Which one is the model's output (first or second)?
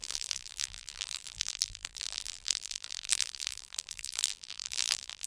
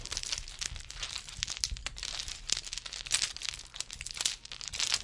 first